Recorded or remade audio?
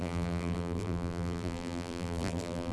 remade